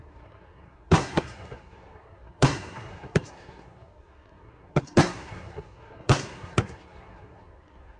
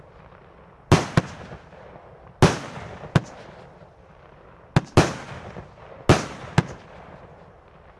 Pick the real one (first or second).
second